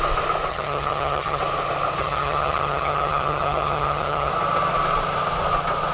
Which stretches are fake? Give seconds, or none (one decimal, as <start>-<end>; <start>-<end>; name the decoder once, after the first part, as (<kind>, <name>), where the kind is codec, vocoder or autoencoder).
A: 0.5-1.4 (vocoder, HiFi-GAN); 2.0-4.3